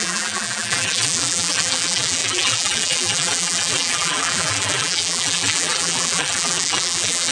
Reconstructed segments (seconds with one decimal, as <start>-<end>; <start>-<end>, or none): 0.0-7.3